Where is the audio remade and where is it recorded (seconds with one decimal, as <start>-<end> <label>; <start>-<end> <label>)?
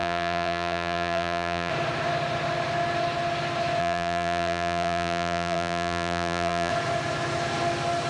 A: 0.0-1.7 remade; 1.7-3.8 recorded; 3.8-6.7 remade; 6.7-8.1 recorded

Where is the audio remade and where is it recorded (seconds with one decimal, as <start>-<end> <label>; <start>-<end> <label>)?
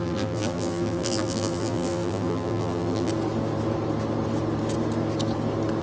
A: 0.0-3.1 remade; 3.1-5.8 recorded